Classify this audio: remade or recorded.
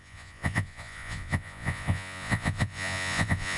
remade